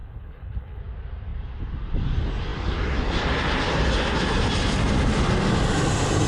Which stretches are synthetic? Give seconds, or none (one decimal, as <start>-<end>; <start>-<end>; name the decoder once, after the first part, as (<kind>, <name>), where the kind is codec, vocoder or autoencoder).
0.0-0.8 (codec, HILCodec)